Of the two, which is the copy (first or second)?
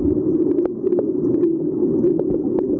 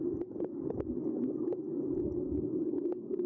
second